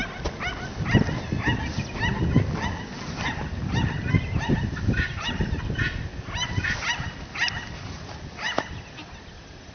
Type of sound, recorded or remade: recorded